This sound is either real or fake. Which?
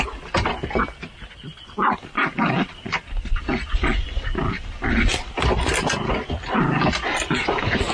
real